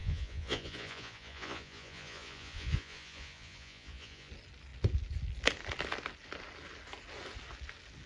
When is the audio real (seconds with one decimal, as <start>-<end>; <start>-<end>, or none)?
4.3-8.1